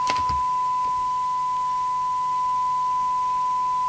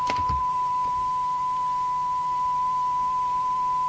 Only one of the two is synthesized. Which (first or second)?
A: second